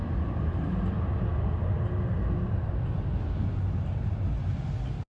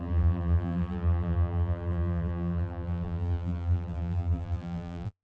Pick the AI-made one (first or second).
second